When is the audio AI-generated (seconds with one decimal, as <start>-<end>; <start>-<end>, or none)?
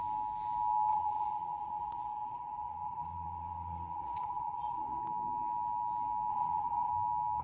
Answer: 0.9-5.0; 6.3-6.9